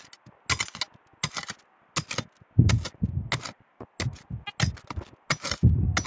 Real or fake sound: real